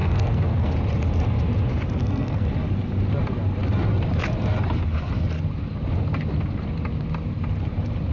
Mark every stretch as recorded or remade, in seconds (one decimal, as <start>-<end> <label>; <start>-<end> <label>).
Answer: 0.0-0.7 remade; 0.7-2.0 recorded; 2.0-2.5 remade; 2.5-8.1 recorded